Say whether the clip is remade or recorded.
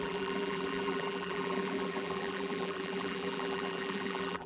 remade